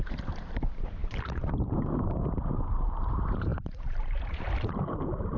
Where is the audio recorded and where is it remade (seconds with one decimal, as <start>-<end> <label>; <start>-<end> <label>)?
0.0-5.4 remade